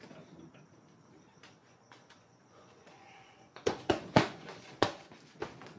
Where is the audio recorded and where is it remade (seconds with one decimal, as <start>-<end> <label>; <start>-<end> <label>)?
0.0-1.6 recorded; 1.6-5.1 remade; 5.1-5.8 recorded